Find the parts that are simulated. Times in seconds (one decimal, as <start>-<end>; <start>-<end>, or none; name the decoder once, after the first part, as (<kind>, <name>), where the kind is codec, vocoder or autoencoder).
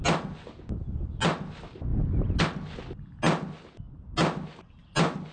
none